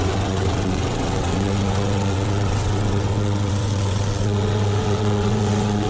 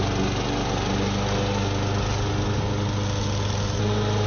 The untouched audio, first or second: second